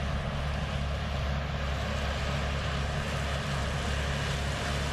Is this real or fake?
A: real